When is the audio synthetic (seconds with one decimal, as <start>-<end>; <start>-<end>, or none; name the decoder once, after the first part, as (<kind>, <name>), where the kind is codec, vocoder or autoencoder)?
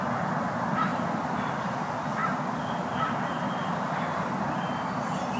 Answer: none